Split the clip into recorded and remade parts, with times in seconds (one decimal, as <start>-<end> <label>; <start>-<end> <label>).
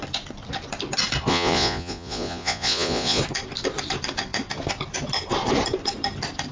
0.0-1.3 recorded; 1.3-3.2 remade; 3.2-6.5 recorded